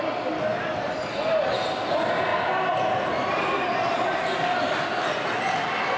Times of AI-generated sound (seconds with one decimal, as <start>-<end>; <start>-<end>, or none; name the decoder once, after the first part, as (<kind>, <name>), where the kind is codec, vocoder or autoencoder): none